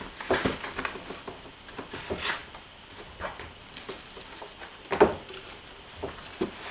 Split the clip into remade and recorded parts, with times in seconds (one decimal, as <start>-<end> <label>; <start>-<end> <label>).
0.0-6.7 recorded